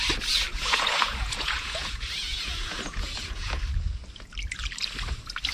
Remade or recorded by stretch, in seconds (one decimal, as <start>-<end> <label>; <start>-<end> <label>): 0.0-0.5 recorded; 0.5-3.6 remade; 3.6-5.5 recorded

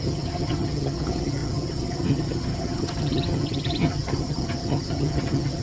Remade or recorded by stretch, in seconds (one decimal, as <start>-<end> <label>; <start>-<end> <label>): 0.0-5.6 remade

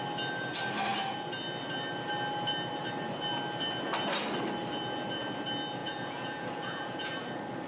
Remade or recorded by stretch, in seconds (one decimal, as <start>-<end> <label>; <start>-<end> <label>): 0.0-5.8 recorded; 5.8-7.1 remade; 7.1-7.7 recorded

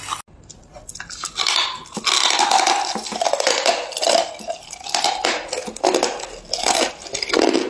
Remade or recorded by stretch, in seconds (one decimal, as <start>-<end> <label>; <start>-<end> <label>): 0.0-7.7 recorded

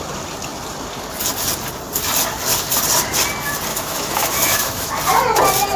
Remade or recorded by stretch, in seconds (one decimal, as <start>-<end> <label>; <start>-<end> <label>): 0.0-3.7 recorded; 3.7-4.9 remade; 4.9-5.8 recorded

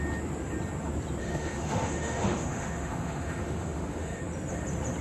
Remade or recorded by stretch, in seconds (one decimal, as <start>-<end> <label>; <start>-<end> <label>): 0.0-1.2 recorded; 1.2-4.2 remade; 4.2-5.0 recorded